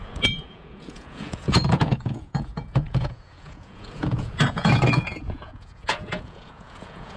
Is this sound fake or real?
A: fake